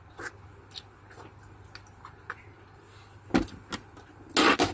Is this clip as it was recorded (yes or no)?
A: yes